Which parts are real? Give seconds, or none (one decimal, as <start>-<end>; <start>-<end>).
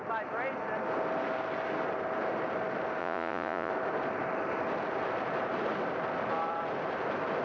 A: 0.0-3.0; 3.7-7.4